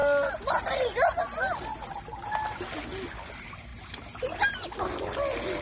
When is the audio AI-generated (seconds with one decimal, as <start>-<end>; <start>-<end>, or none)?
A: 3.7-4.5